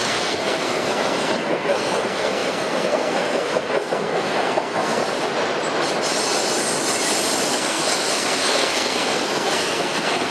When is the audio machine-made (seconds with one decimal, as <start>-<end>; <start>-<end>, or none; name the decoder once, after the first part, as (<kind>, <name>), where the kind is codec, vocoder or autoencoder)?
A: 0.0-5.0 (codec, SNAC); 7.5-10.3